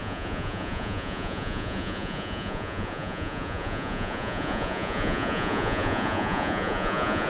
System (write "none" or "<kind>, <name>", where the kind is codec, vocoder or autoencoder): vocoder, Vocos